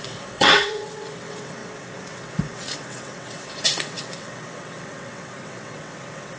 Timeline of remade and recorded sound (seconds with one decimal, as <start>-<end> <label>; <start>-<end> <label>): 0.0-6.4 remade

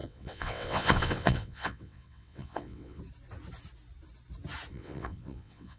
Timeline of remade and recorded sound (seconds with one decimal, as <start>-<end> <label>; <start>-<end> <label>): 0.0-3.0 remade; 3.0-4.7 recorded; 4.7-5.8 remade

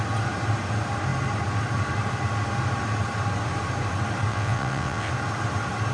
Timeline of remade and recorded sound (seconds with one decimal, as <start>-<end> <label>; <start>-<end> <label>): 0.0-4.3 recorded; 4.3-5.1 remade; 5.1-5.9 recorded

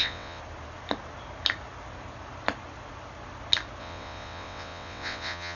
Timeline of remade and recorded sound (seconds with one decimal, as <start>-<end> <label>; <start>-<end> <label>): 0.0-0.4 remade; 0.4-3.8 recorded; 3.8-5.6 remade

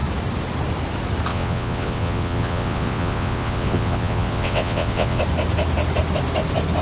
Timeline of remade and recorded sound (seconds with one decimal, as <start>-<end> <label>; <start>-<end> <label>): 0.0-1.3 recorded; 1.3-5.2 remade; 5.2-6.8 recorded

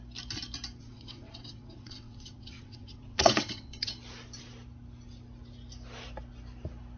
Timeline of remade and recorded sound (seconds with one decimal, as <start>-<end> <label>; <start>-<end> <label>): 0.0-0.8 recorded; 0.8-3.9 remade; 3.9-7.0 recorded

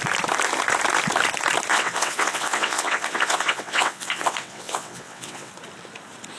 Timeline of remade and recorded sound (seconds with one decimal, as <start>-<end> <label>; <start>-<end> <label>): 0.0-1.7 recorded; 1.7-5.5 remade; 5.5-6.4 recorded

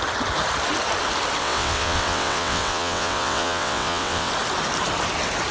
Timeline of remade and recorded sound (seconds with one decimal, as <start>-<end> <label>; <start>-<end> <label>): 0.0-1.4 recorded; 1.4-4.3 remade; 4.3-5.5 recorded